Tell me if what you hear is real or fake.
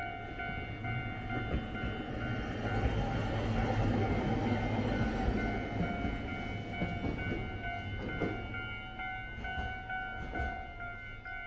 real